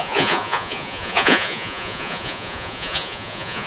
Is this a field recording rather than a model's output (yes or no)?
no